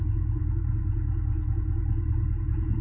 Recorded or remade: remade